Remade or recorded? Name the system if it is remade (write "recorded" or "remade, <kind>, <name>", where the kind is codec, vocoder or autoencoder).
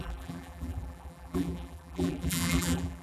remade, vocoder, BigVGAN v2